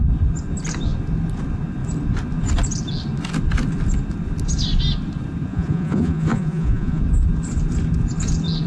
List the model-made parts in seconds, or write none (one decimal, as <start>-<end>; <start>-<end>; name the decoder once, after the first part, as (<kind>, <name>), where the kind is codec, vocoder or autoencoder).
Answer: 5.5-7.0 (vocoder, Vocos)